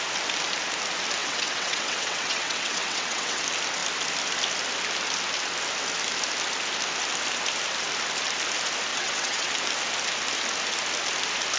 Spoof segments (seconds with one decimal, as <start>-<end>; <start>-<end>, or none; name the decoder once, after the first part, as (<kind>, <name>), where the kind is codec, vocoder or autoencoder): 1.2-3.4 (vocoder, WaveNeXt); 8.9-9.5